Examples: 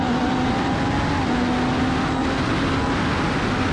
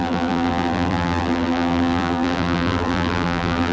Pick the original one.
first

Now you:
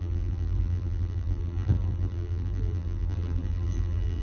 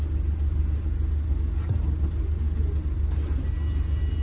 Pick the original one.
second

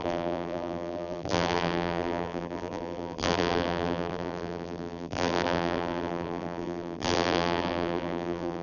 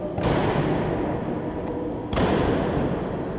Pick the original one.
second